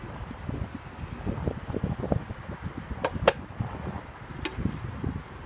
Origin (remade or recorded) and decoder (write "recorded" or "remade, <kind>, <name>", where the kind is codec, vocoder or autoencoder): recorded